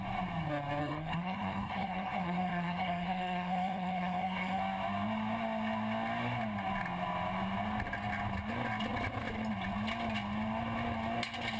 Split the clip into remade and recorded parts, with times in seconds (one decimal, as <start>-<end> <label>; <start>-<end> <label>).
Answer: 0.0-0.8 recorded; 0.8-4.6 remade; 4.6-11.6 recorded